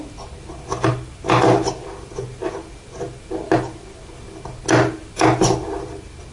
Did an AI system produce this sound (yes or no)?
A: no